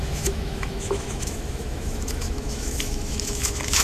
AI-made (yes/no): yes